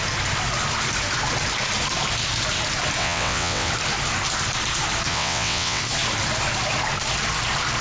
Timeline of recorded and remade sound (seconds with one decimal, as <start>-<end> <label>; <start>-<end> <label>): 0.0-3.0 recorded; 3.0-3.7 remade; 3.7-5.1 recorded; 5.1-5.8 remade; 5.8-7.8 recorded